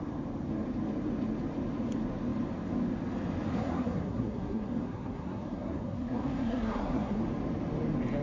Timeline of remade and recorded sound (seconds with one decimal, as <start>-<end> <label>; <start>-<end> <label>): 0.0-3.5 recorded; 3.5-7.2 remade; 7.2-8.2 recorded